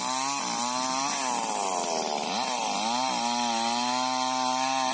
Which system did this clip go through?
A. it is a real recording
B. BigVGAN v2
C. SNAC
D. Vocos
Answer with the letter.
A